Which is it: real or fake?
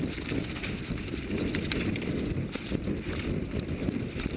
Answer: real